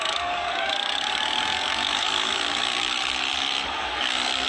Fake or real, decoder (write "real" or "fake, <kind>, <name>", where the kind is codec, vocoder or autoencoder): fake, codec, DAC